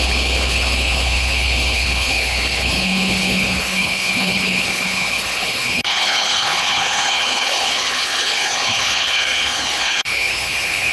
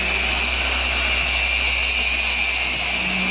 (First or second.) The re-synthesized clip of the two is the first